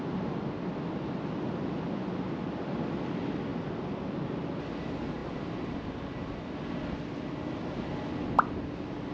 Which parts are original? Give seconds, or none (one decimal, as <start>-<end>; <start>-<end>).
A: 0.0-9.1